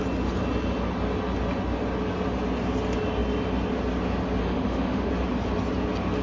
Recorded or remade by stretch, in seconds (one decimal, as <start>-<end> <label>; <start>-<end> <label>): 0.0-4.4 recorded; 4.4-5.1 remade; 5.1-6.2 recorded